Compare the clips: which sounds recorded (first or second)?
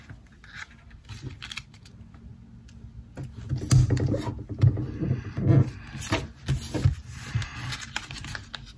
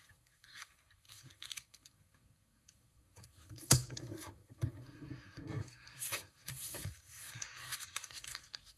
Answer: first